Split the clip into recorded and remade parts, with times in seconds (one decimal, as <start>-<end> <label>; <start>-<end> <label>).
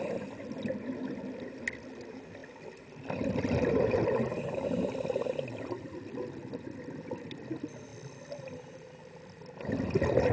0.0-4.3 recorded; 4.3-5.0 remade; 5.0-10.3 recorded